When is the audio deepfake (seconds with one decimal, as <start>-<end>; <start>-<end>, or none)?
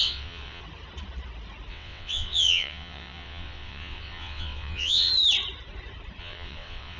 0.0-0.6; 1.7-5.1; 6.2-7.0